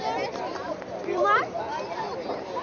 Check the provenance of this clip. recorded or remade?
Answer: recorded